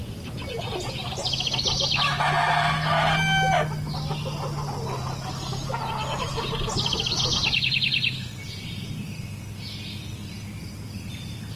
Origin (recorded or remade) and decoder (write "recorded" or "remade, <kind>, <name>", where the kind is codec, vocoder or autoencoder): recorded